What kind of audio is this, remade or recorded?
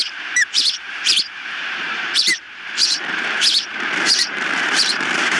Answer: remade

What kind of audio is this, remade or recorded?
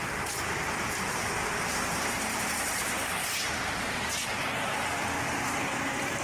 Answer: remade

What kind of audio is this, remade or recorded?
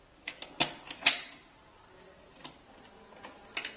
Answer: recorded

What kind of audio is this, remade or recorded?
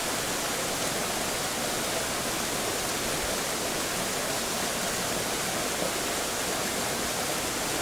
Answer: recorded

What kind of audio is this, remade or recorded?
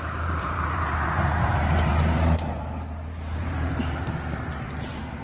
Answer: remade